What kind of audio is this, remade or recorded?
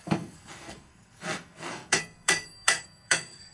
remade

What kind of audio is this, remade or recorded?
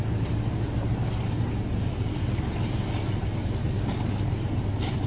recorded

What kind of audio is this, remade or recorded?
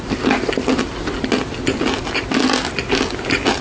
recorded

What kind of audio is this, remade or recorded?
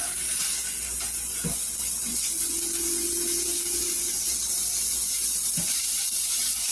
recorded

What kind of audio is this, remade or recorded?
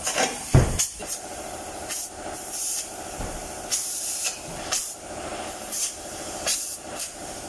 remade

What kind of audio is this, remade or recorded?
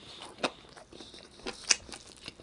recorded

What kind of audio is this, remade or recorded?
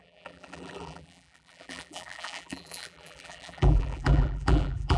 remade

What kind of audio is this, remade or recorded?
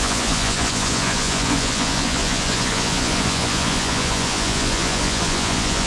remade